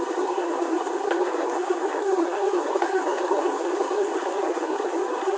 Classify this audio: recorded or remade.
remade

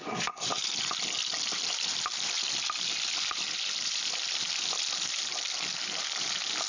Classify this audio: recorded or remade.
recorded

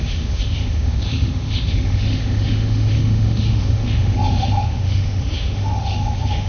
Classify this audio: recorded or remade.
remade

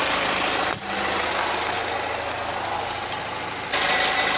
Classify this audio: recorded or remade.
recorded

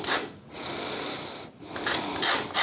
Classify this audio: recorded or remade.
recorded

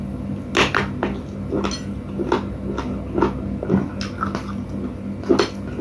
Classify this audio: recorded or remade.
recorded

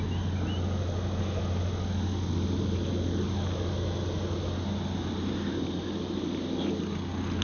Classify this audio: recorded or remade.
recorded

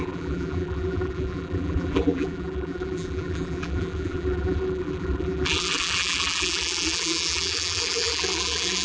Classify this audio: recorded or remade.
remade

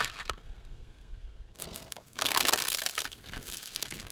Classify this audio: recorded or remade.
remade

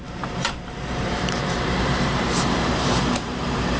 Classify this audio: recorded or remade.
remade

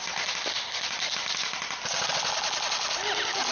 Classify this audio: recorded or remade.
recorded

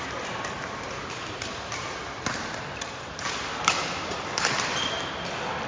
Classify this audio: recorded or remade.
recorded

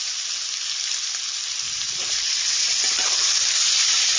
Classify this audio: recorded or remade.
recorded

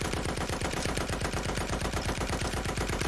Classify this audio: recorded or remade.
remade